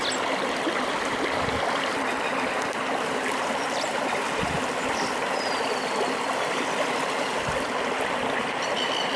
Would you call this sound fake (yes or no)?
yes